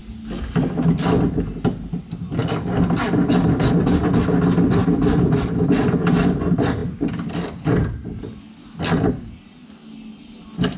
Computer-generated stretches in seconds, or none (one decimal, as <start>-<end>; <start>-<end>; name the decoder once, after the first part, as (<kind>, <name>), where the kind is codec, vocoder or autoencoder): none